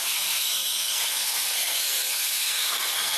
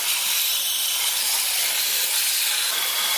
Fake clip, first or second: first